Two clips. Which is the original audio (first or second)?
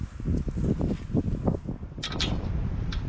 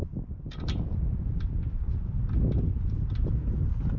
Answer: first